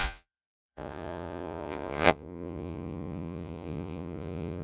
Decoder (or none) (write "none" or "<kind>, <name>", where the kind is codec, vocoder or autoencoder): vocoder, Vocos